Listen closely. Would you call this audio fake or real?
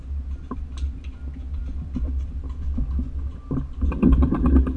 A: real